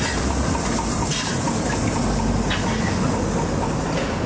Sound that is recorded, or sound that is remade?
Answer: recorded